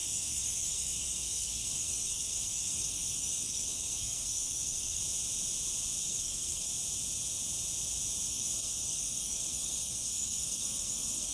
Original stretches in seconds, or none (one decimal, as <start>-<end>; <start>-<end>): 5.0-6.0; 6.7-8.3